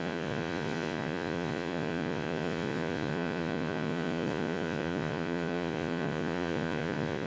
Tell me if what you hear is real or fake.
fake